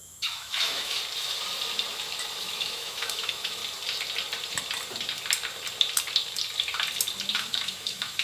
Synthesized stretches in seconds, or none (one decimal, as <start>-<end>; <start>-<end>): 0.0-1.0; 2.4-3.6; 7.3-8.2

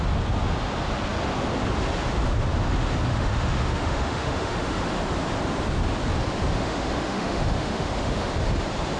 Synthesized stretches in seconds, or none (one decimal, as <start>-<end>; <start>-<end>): 3.1-4.8; 6.6-8.3

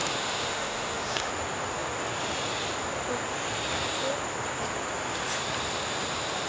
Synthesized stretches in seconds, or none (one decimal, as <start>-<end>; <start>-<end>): 0.0-1.3